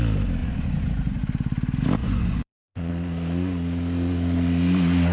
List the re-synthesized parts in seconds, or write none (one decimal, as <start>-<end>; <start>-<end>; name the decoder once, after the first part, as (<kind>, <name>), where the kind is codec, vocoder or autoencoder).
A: 0.4-1.2 (vocoder, Vocos); 2.0-2.9